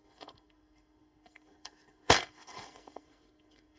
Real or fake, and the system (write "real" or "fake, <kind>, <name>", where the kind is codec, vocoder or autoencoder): fake, codec, SNAC